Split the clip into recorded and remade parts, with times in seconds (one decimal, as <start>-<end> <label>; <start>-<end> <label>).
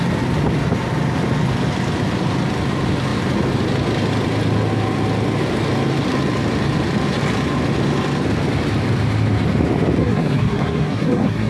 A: 0.0-10.0 recorded; 10.0-11.5 remade